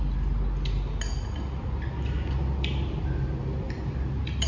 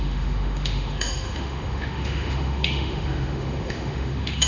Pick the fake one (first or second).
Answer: second